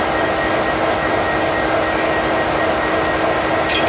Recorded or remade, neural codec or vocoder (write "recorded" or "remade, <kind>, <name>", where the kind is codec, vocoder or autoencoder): recorded